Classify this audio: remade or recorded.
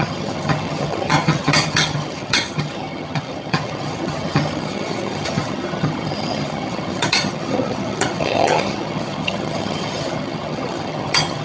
remade